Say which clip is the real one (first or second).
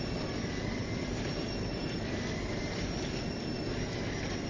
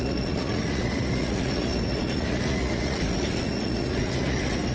first